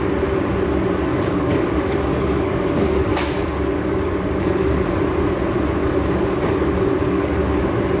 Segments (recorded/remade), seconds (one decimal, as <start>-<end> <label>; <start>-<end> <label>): 0.0-1.1 recorded; 1.1-5.0 remade; 5.0-5.8 recorded; 5.8-7.6 remade; 7.6-8.0 recorded